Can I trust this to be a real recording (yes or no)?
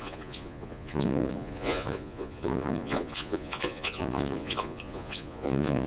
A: no